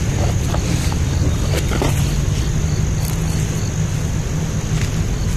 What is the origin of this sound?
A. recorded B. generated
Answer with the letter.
A